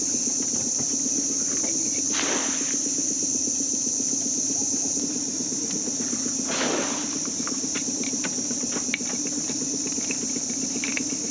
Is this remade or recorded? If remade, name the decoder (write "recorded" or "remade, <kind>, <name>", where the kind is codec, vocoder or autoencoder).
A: recorded